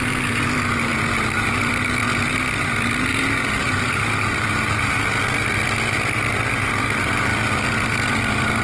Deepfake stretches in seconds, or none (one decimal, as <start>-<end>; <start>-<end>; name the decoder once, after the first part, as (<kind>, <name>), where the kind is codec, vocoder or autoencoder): 0.9-1.6 (vocoder, BigVGAN v2); 3.1-5.0